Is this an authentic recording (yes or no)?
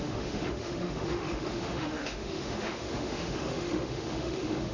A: no